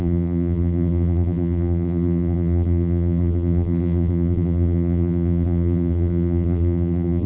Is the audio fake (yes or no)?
yes